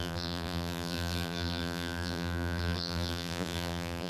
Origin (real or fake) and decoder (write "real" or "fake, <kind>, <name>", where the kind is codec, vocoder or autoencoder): fake, vocoder, BigVGAN v2